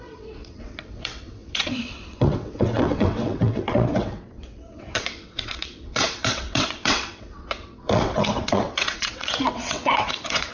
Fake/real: fake